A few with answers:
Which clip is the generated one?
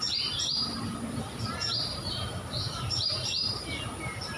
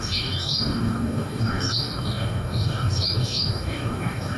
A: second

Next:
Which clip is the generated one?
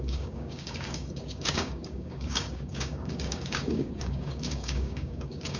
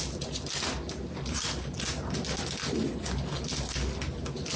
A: first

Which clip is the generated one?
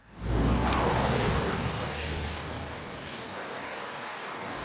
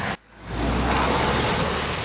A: first